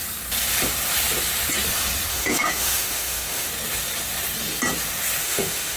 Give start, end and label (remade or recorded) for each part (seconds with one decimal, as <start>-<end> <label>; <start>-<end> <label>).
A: 0.0-2.1 recorded; 2.1-3.5 remade; 3.5-5.2 recorded; 5.2-5.8 remade